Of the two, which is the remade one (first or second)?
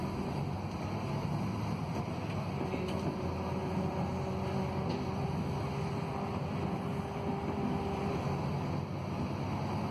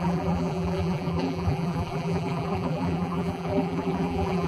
second